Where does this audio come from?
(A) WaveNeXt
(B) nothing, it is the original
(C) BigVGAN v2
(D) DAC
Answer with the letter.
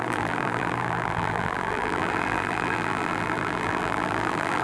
C